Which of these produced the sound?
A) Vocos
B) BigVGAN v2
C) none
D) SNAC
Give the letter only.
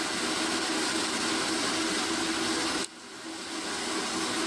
C